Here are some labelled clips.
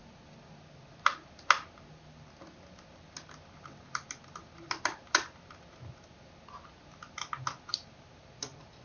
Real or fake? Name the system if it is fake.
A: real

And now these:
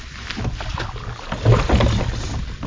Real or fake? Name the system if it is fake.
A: real